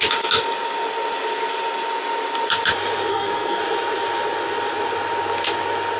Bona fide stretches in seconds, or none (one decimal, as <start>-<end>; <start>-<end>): 0.0-3.1; 3.6-6.0